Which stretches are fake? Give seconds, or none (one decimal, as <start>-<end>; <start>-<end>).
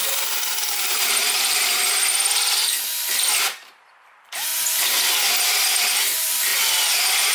0.0-4.5; 5.9-6.5